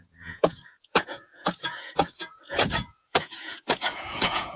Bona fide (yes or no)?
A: no